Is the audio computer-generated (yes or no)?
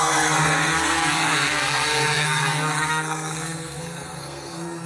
yes